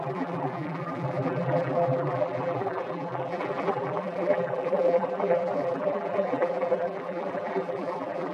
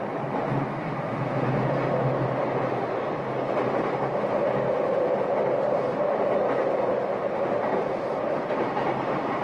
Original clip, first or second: second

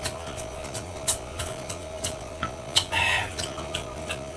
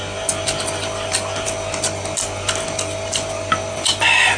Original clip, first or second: second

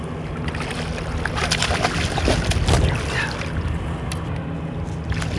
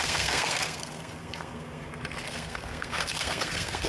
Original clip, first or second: first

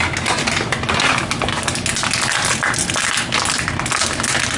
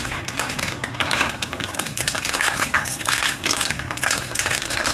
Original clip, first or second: first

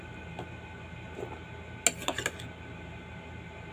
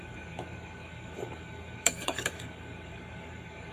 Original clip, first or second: first